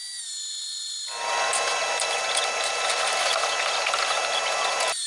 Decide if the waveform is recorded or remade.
recorded